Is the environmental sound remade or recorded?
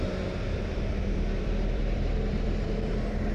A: remade